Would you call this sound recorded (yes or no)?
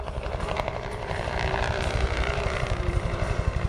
no